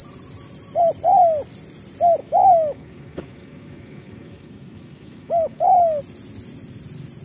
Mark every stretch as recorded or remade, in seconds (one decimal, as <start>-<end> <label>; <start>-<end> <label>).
0.0-2.2 recorded; 2.2-6.0 remade; 6.0-7.2 recorded